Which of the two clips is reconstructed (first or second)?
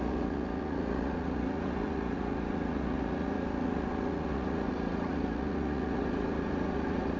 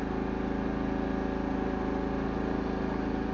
first